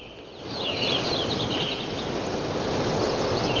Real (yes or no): yes